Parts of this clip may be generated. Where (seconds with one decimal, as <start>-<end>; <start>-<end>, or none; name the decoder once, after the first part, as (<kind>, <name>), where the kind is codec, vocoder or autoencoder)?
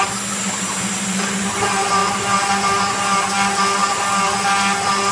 none